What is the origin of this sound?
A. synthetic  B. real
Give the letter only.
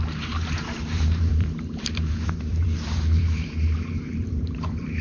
A